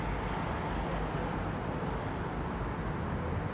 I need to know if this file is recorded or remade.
recorded